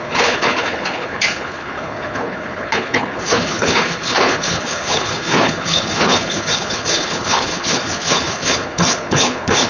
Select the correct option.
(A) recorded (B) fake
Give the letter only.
B